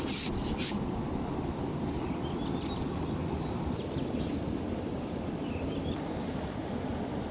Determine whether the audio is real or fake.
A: fake